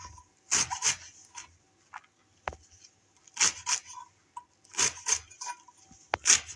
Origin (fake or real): real